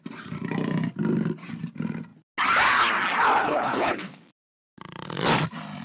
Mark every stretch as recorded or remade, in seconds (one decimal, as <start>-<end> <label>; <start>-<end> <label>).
0.0-3.4 recorded; 3.4-4.3 remade; 4.3-5.8 recorded